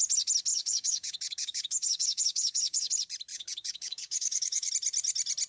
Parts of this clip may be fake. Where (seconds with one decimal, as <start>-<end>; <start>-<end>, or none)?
0.5-2.9; 3.3-4.7